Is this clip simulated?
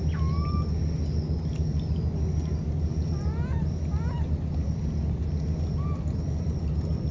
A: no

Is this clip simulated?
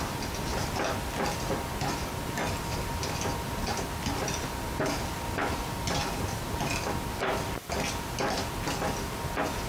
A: no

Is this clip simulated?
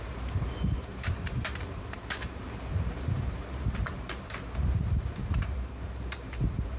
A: yes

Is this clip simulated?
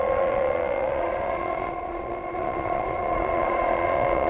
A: yes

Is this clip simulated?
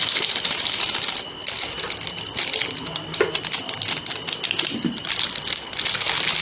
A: no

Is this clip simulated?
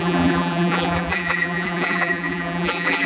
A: yes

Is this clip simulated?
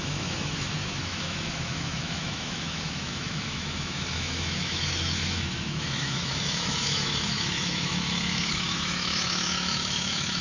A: yes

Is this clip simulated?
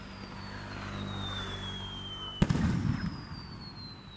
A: no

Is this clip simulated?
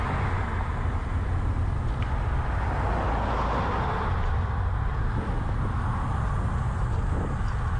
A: no